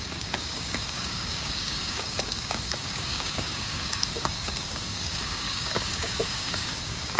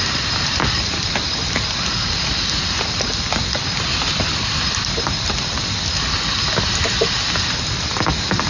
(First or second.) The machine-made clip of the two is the first